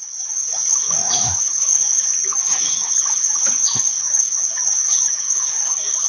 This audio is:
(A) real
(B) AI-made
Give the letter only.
B